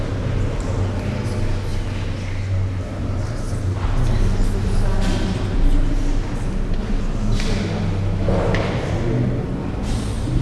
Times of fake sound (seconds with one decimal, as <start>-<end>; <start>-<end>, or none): none